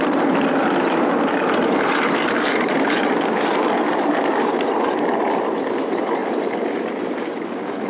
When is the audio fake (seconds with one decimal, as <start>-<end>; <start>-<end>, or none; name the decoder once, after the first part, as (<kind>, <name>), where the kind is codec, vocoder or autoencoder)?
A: 0.0-7.9 (vocoder, BigVGAN v2)